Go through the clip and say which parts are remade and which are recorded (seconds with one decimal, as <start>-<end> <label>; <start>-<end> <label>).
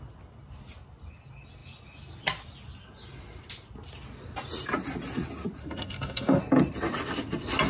0.0-5.6 recorded; 5.6-6.4 remade; 6.4-7.7 recorded